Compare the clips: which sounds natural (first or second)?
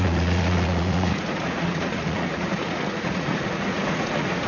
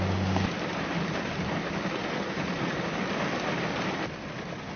second